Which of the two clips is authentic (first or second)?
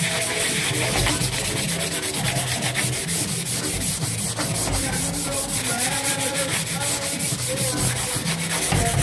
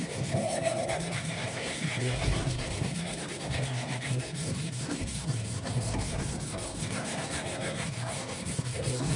first